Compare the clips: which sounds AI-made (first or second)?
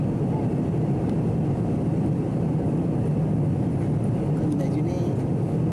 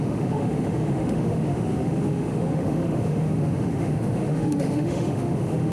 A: second